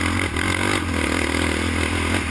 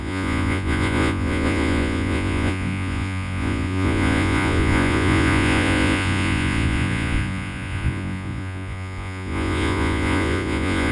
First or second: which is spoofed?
second